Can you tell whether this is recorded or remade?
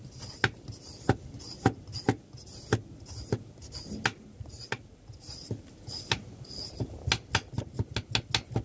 recorded